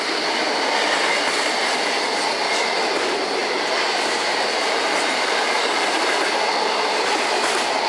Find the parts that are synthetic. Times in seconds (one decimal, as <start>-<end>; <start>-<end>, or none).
3.4-7.1